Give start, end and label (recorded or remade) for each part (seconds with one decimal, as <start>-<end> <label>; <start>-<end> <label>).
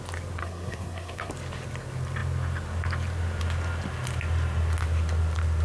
0.0-0.4 recorded; 0.4-1.3 remade; 1.3-5.6 recorded